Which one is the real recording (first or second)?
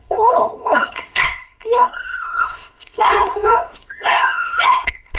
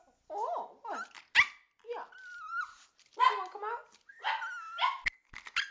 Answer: second